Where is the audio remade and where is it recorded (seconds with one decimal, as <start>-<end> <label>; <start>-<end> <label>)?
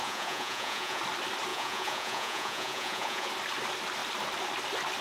0.0-1.0 remade; 1.0-1.5 recorded; 1.5-3.3 remade; 3.3-5.0 recorded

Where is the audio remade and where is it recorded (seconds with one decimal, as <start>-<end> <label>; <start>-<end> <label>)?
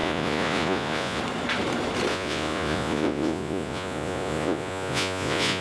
0.0-1.2 remade; 1.2-2.1 recorded; 2.1-5.6 remade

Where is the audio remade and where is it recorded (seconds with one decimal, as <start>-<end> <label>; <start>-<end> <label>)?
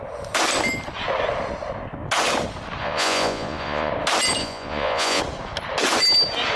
0.0-2.8 recorded; 2.8-3.9 remade; 3.9-4.4 recorded; 4.4-5.2 remade; 5.2-6.6 recorded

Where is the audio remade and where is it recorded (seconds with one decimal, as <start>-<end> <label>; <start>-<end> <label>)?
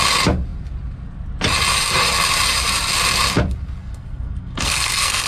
0.0-3.8 recorded; 3.8-5.3 remade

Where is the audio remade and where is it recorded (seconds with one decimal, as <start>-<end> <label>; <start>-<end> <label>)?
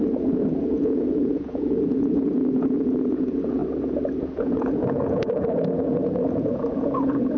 0.0-3.6 remade; 3.6-4.2 recorded; 4.2-7.4 remade